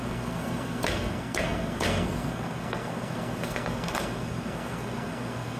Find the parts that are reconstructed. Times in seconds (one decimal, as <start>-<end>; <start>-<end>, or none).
0.0-5.6

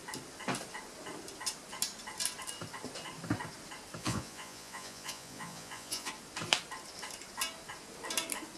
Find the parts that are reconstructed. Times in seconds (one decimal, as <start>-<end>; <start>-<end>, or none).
4.0-6.1

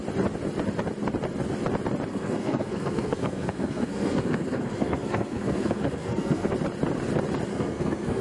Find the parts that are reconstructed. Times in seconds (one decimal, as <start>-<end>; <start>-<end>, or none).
2.1-6.5; 7.5-8.2

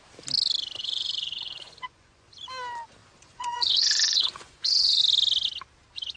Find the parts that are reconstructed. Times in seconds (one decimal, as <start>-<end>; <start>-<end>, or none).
0.8-2.3; 3.0-5.0

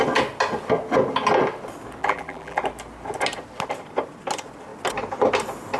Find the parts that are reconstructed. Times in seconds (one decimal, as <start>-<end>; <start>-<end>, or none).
2.0-2.6

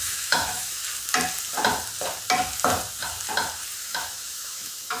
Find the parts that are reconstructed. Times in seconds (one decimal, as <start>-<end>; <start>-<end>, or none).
0.0-0.8; 3.8-5.0

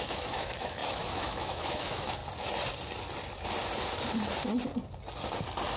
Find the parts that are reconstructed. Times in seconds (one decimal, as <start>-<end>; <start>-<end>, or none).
0.0-2.2